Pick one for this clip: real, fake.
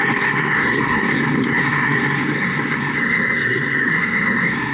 fake